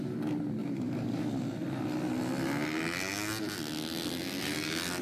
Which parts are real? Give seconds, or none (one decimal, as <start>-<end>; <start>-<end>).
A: 0.0-0.6; 1.2-5.0